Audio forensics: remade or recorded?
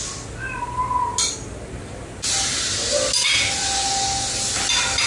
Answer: recorded